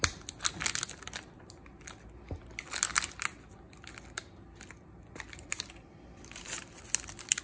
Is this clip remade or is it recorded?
recorded